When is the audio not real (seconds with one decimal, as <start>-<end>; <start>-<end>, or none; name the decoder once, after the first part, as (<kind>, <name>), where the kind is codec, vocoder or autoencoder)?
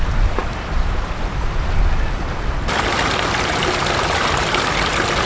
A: none